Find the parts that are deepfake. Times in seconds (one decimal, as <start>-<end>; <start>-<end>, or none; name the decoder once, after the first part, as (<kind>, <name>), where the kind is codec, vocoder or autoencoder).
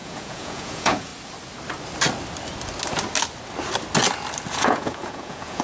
0.0-1.1 (vocoder, Vocos); 4.5-5.6